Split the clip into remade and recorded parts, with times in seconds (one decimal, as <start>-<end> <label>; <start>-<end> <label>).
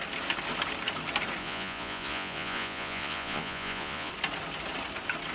0.0-1.4 recorded; 1.4-4.1 remade; 4.1-5.3 recorded